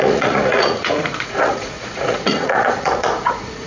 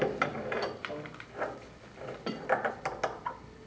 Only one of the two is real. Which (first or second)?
second